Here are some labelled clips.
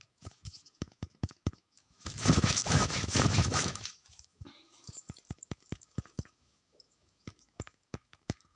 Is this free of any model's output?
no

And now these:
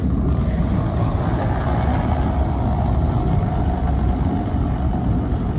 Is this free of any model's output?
yes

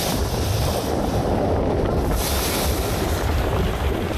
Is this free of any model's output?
yes